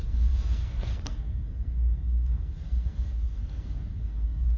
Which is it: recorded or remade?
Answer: remade